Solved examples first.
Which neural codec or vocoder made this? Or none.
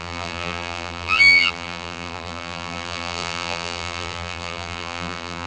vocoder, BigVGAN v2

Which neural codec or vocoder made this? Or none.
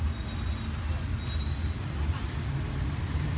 none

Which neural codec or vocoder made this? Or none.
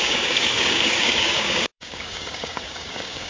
codec, DAC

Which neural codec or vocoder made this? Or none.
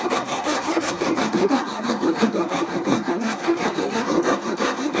codec, SNAC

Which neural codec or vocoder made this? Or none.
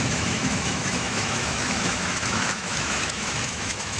autoencoder, DAC-VAE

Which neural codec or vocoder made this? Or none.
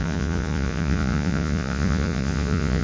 vocoder, Vocos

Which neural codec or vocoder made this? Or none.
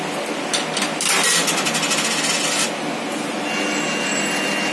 none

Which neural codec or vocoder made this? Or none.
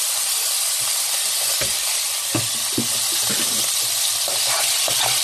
none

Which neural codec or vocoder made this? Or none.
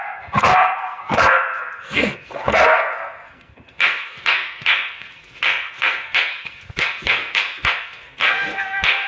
codec, SNAC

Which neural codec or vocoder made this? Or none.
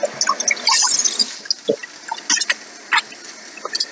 none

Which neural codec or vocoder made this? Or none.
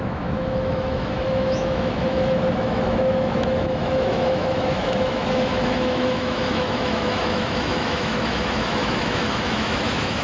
autoencoder, DAC-VAE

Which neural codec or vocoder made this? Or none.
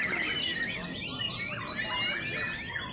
none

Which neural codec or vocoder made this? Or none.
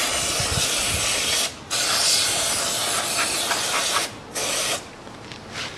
none